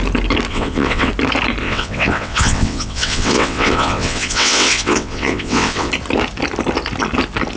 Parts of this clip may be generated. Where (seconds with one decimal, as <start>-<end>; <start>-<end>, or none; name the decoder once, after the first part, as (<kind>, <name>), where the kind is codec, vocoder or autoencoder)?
0.5-1.1 (vocoder, WaveNeXt); 1.6-5.9